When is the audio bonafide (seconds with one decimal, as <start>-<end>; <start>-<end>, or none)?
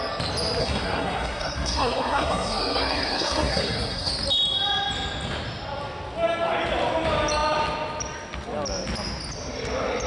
0.0-0.6; 4.1-10.1